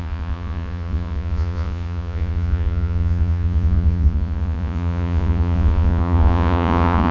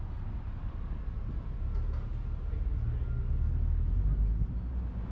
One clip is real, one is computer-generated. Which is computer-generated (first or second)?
first